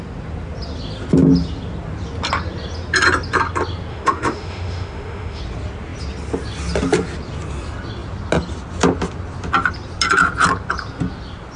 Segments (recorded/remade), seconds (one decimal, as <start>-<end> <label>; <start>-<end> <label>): 0.0-3.9 recorded; 3.9-5.4 remade; 5.4-11.6 recorded